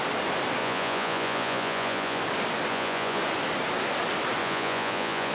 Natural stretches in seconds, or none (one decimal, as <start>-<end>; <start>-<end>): 0.0-0.6; 2.2-2.7; 3.2-4.4